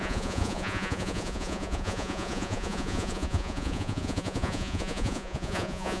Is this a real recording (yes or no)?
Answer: no